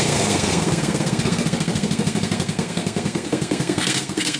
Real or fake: fake